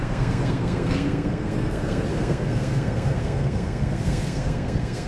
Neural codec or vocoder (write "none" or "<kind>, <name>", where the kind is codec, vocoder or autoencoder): codec, SNAC